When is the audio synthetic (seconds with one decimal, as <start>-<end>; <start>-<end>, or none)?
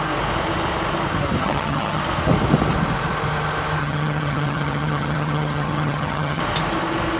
1.4-2.0; 3.8-6.4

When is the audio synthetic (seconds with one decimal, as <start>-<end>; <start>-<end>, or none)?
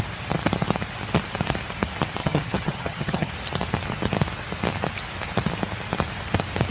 2.2-3.3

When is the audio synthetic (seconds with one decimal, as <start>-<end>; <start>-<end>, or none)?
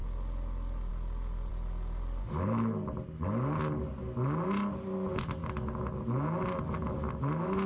none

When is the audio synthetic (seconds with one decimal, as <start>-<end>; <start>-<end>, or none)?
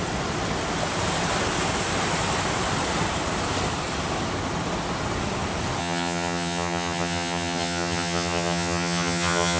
5.8-9.6